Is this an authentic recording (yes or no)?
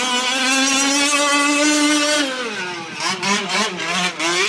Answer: yes